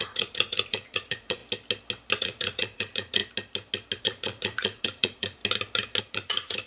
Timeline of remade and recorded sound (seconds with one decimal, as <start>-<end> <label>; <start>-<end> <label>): 0.0-1.4 remade; 1.4-2.2 recorded; 2.2-3.2 remade; 3.2-4.0 recorded; 4.0-5.4 remade; 5.4-6.0 recorded; 6.0-6.7 remade